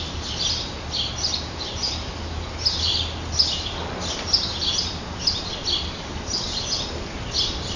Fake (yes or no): no